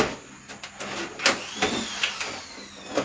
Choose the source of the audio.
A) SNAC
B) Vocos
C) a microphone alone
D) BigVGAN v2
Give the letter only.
C